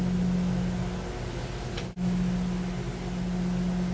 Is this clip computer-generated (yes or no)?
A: no